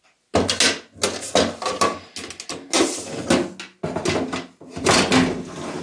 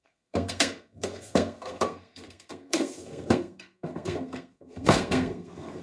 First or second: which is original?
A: first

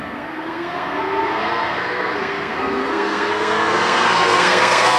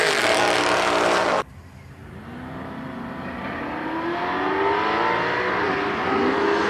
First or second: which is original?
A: second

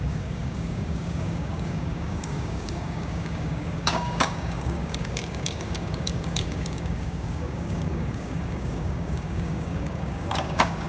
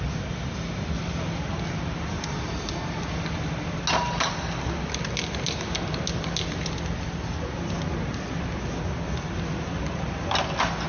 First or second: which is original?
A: second